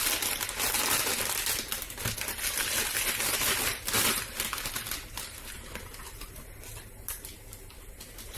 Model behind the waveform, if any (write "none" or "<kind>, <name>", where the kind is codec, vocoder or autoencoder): none